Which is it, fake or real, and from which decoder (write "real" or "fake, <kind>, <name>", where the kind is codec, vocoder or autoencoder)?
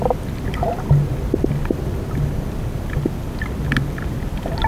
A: real